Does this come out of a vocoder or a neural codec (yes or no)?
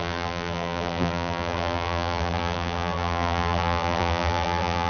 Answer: yes